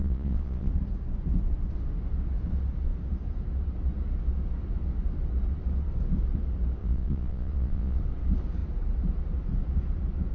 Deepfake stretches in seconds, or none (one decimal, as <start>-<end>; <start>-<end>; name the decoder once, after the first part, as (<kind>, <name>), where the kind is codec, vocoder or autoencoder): 0.0-0.7 (vocoder, Vocos); 6.8-8.0